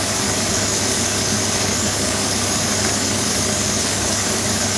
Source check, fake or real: fake